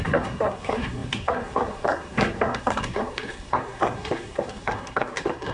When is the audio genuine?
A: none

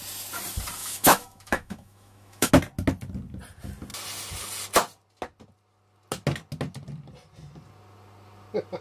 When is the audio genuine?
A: 0.0-0.8; 2.5-8.8

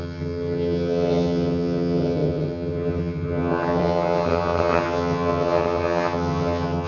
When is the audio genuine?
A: none

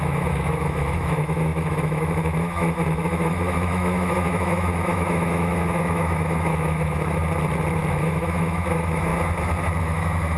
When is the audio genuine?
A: 7.2-7.9; 9.1-9.8

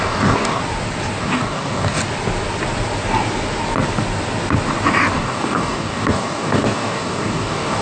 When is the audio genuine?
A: 0.6-1.2; 2.0-5.1

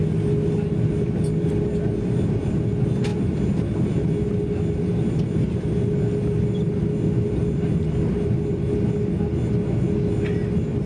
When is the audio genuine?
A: 0.0-10.9

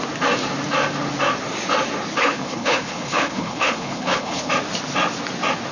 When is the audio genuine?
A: 0.0-2.2; 4.5-5.7

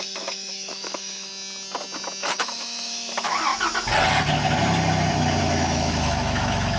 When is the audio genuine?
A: 1.3-2.3; 3.5-5.4